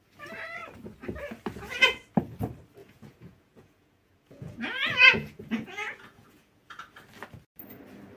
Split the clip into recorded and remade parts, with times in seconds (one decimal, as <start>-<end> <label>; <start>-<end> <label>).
0.0-2.8 recorded; 2.8-6.7 remade; 6.7-8.2 recorded